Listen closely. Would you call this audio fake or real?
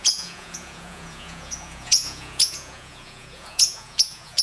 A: fake